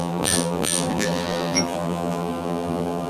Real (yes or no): no